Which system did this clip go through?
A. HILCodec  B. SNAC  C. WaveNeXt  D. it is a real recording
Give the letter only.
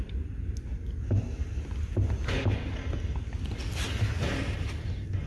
D